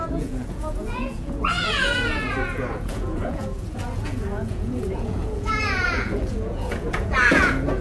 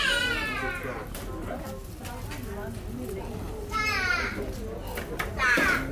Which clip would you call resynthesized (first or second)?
first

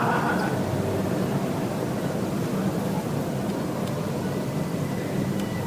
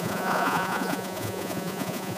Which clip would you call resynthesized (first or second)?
second